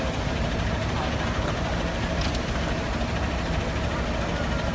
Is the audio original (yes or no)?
yes